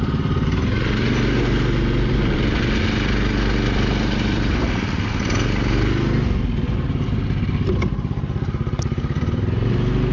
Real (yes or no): yes